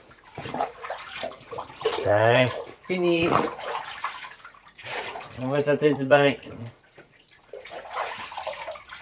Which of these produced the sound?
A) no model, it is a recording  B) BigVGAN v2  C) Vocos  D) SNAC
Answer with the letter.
C